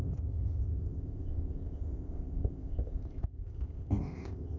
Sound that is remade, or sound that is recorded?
remade